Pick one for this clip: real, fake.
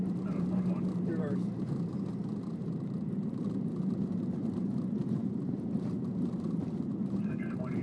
fake